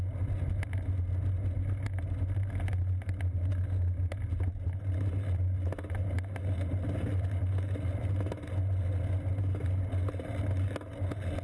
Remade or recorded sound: recorded